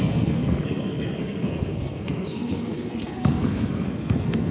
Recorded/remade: remade